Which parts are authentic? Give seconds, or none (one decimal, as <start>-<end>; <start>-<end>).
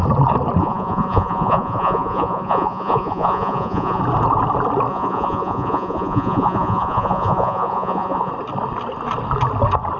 0.0-0.6; 4.0-4.9; 8.3-10.0